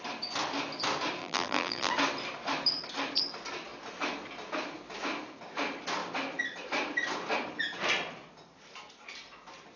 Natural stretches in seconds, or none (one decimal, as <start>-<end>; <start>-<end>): 0.0-1.2; 1.9-9.8